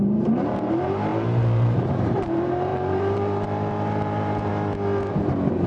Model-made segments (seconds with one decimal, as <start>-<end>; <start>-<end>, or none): 0.0-4.5; 5.1-5.7